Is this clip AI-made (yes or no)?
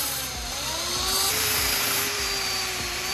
yes